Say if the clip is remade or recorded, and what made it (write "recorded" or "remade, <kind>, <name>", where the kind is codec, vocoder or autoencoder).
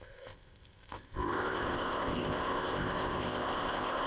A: remade, codec, ZipCodec